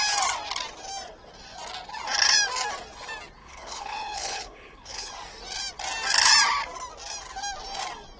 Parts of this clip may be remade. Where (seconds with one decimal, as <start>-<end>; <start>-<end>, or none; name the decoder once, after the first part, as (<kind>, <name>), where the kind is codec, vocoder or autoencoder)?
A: 3.4-5.1 (codec, HILCodec)